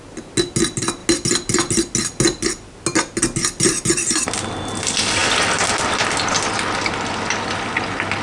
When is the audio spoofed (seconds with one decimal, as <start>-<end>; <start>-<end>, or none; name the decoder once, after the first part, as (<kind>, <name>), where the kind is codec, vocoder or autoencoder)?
none